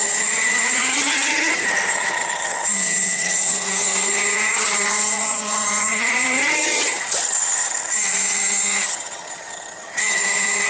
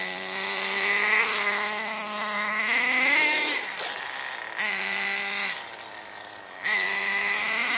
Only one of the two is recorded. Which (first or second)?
second